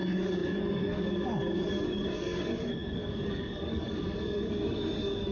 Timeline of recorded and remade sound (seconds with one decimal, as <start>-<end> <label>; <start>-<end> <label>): 0.0-5.3 remade